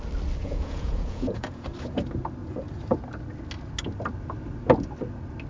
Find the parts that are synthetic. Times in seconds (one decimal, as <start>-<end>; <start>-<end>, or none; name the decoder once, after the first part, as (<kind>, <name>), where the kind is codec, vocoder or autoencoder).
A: 0.4-1.7 (vocoder, Vocos)